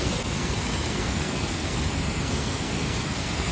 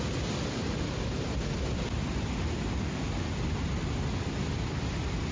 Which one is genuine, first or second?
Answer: second